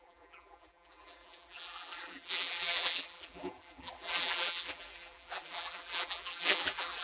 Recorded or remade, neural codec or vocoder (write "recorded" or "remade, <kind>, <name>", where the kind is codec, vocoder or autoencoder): remade, vocoder, BigVGAN v2